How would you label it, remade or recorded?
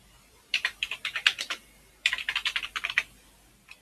remade